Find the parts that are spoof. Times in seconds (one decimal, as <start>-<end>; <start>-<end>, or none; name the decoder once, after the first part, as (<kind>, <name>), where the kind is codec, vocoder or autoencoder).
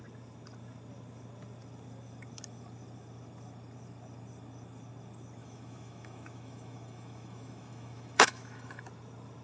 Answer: 5.4-8.8 (autoencoder, DAC-VAE)